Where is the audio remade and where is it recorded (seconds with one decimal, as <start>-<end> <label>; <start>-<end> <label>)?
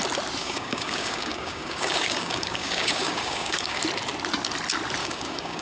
0.0-0.4 recorded; 0.4-3.8 remade; 3.8-5.0 recorded; 5.0-5.6 remade